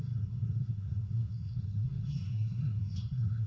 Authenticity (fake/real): fake